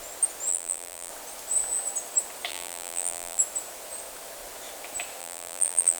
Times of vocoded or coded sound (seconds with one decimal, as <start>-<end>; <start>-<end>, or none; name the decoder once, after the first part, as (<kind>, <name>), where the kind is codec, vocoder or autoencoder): 0.5-1.1 (vocoder, BigVGAN v2); 2.5-3.4; 5.2-6.0